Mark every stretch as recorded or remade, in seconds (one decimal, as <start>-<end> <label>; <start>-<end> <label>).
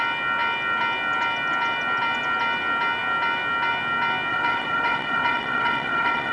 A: 0.0-4.3 recorded; 4.3-6.3 remade